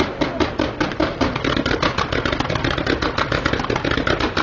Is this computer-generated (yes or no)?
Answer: no